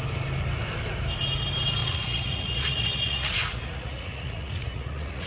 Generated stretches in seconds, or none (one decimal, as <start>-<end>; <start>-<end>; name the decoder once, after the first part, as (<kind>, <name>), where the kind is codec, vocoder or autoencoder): 1.8-5.3 (vocoder, Vocos)